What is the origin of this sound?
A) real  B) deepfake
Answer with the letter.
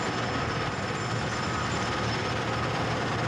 A